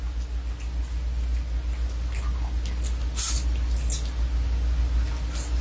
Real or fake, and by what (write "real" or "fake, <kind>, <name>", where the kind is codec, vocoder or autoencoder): real